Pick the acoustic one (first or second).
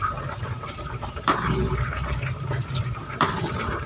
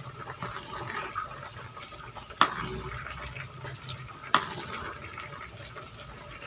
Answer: second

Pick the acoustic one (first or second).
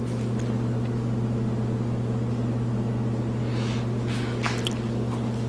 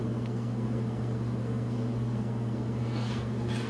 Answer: first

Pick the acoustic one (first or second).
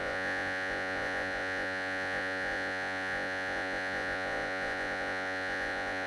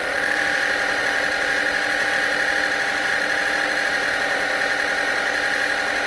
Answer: second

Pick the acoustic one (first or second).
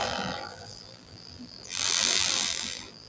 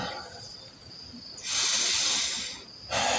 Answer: second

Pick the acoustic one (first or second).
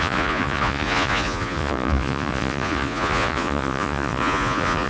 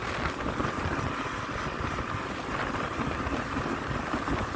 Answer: second